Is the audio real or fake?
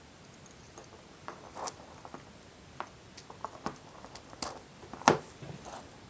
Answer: real